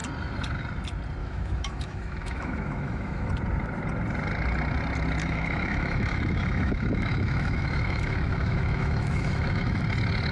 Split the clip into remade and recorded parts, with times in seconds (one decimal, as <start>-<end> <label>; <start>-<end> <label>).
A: 0.0-1.2 recorded; 1.2-3.3 remade; 3.3-5.2 recorded; 5.2-9.8 remade; 9.8-10.3 recorded